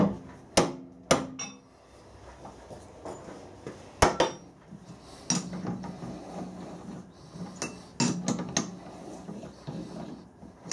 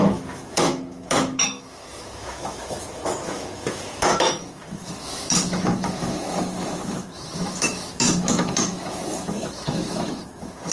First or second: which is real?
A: first